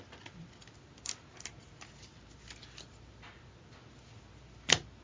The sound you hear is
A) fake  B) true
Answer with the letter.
B